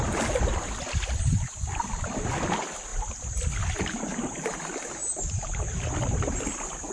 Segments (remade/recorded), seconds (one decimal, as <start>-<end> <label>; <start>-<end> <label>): 0.0-1.3 recorded; 1.3-1.8 remade; 1.8-5.0 recorded; 5.0-5.5 remade; 5.5-6.9 recorded

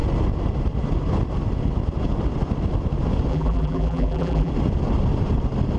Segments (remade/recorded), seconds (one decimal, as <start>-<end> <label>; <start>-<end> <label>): 0.0-3.3 recorded; 3.3-4.5 remade; 4.5-5.8 recorded

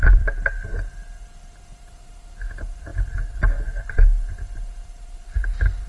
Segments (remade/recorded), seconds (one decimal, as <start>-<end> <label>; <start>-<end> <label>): 0.0-5.9 recorded